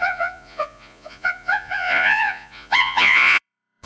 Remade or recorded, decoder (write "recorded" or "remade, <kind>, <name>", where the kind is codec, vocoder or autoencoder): remade, vocoder, Vocos